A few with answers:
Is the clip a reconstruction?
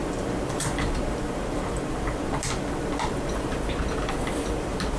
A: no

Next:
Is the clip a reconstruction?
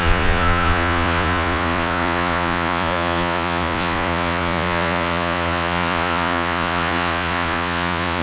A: yes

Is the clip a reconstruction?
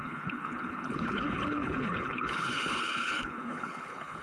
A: yes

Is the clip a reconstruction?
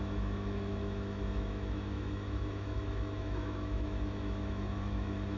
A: yes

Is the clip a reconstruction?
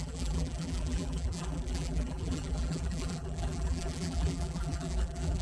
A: yes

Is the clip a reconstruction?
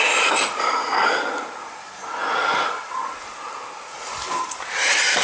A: no